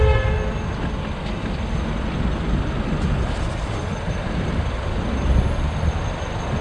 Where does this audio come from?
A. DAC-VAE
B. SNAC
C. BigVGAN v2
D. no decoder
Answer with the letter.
D